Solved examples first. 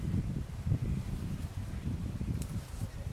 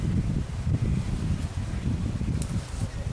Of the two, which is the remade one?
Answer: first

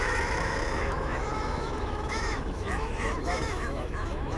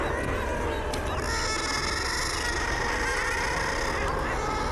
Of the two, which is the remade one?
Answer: first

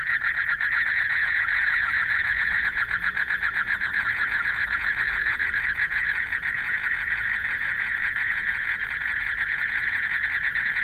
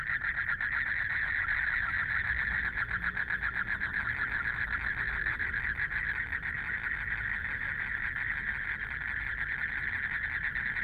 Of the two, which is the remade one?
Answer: first